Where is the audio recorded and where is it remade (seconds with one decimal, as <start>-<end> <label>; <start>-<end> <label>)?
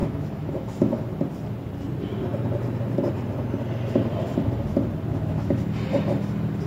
0.0-1.0 remade; 1.0-5.1 recorded; 5.1-5.6 remade; 5.6-6.7 recorded